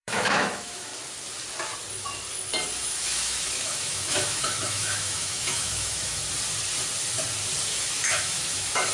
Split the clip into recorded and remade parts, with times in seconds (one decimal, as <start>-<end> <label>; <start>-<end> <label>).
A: 0.0-0.9 remade; 0.9-2.8 recorded; 2.8-6.2 remade; 6.2-7.7 recorded; 7.7-8.9 remade